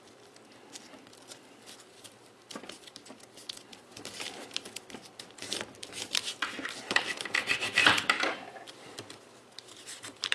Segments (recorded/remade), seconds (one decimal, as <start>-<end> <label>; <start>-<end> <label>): 0.0-10.3 remade

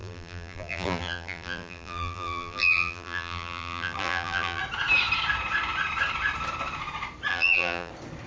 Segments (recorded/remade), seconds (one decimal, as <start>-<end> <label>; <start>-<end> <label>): 0.0-4.6 remade; 4.6-7.3 recorded; 7.3-7.9 remade; 7.9-8.3 recorded

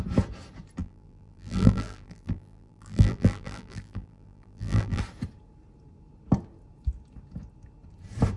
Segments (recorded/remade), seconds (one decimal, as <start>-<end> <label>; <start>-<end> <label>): 0.0-0.8 recorded; 0.8-5.0 remade; 5.0-8.4 recorded

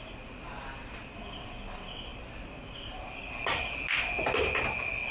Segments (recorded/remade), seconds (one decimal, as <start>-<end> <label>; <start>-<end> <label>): 0.0-5.1 recorded

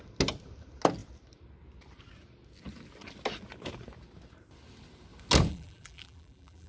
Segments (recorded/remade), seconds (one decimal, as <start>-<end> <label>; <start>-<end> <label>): 0.0-5.5 recorded; 5.5-6.7 remade

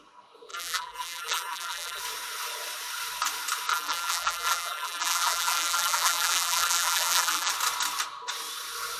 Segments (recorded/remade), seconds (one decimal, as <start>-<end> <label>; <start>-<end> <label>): 0.0-0.5 recorded; 0.5-2.0 remade; 2.0-3.7 recorded; 3.7-7.5 remade; 7.5-9.0 recorded

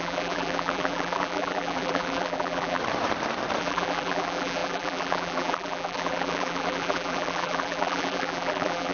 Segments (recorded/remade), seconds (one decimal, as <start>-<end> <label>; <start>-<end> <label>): 0.0-2.8 remade; 2.8-3.6 recorded; 3.6-8.9 remade